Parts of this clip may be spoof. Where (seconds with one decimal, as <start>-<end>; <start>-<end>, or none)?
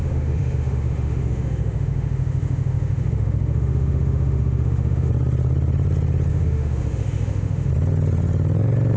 0.0-5.1; 6.3-7.7